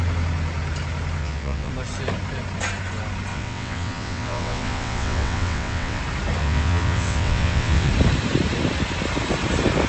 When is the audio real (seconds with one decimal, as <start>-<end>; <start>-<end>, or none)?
0.0-1.2; 1.7-3.3; 6.0-6.4; 7.9-9.9